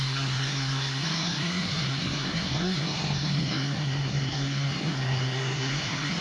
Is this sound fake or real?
fake